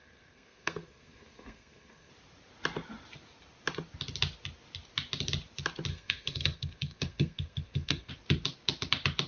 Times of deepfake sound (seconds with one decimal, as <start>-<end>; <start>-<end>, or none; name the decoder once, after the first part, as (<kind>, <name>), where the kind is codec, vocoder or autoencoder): 0.0-2.1 (codec, SNAC); 5.9-8.1

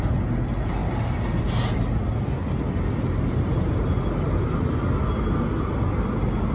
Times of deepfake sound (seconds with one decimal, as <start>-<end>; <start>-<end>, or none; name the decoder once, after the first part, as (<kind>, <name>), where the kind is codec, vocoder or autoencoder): none

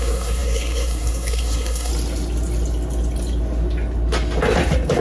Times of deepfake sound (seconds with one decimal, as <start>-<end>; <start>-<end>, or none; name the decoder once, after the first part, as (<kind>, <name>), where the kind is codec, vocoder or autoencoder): 0.0-1.9 (codec, SNAC)

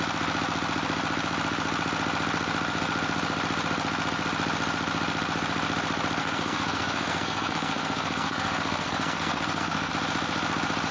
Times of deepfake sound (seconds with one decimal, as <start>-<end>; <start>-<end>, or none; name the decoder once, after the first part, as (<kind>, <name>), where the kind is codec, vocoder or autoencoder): 6.2-9.9 (codec, SNAC)